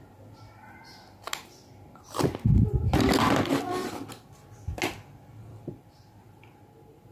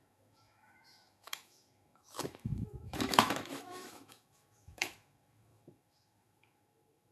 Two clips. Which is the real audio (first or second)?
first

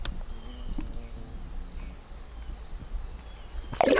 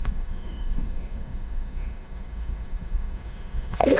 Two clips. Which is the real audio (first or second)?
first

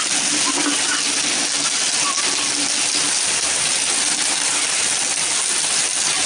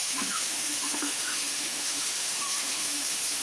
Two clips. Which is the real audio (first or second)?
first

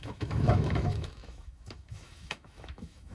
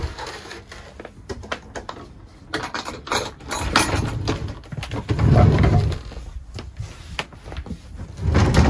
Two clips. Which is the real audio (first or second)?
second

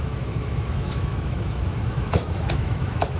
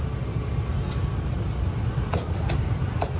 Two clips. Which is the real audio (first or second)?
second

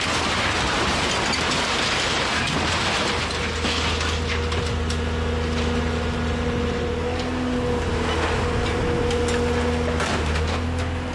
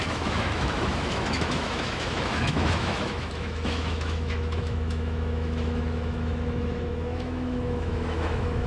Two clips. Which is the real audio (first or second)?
first